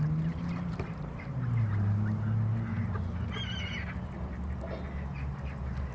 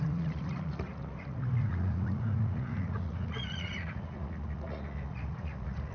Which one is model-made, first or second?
second